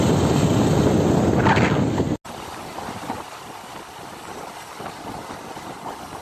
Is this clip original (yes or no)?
yes